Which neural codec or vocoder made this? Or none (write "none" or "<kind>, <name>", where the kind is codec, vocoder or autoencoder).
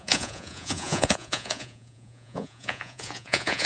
vocoder, Vocos